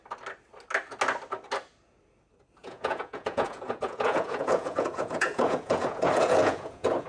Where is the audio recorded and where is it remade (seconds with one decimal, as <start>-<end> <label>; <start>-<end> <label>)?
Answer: 0.0-2.6 recorded; 2.6-7.1 remade